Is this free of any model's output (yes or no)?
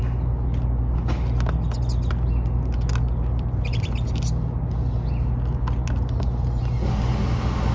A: yes